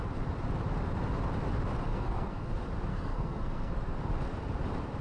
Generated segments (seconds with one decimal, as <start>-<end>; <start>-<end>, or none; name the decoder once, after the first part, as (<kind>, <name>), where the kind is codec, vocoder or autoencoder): 1.9-2.5 (codec, SNAC); 2.9-3.7